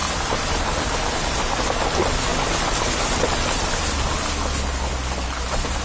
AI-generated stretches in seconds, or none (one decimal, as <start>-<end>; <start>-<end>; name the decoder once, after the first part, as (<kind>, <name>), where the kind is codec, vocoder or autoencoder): none

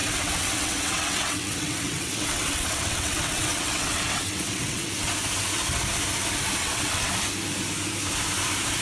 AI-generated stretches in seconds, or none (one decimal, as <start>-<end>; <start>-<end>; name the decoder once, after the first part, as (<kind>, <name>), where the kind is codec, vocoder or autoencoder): 0.0-5.1 (vocoder, WaveNeXt); 6.6-7.1

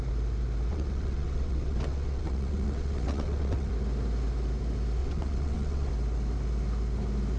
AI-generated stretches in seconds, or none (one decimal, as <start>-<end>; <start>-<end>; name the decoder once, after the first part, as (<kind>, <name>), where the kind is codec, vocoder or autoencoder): 0.7-3.7 (vocoder, WaveNeXt); 5.0-5.9

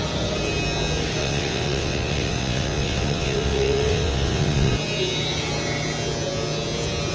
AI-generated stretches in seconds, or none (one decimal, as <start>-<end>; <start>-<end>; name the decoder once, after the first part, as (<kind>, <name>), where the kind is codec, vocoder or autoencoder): 1.2-4.7 (vocoder, WaveNeXt)

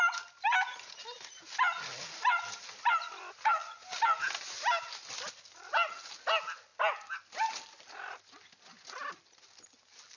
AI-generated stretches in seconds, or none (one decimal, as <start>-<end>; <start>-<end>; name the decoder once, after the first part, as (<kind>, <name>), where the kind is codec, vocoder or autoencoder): none